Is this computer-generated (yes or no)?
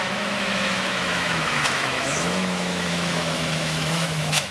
yes